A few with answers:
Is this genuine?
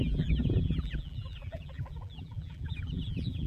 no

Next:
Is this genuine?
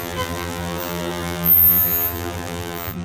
no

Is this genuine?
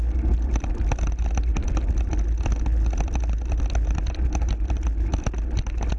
yes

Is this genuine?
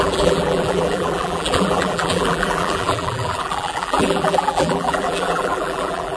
no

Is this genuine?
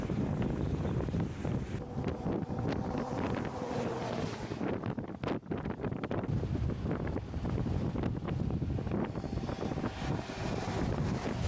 yes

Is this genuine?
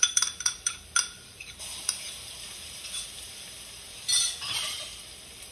no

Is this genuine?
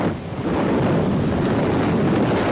yes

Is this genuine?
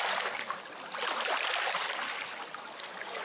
yes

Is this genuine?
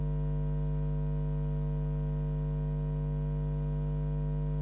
yes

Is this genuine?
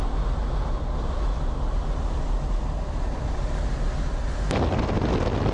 yes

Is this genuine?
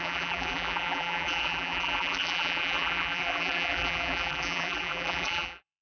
no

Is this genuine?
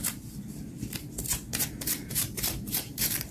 no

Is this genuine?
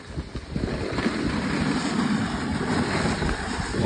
yes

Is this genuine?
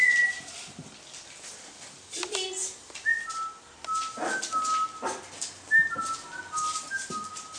yes